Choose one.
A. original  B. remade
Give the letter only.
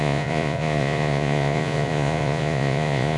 B